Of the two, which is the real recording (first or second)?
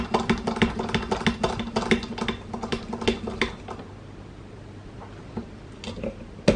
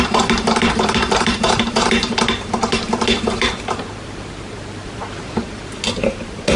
first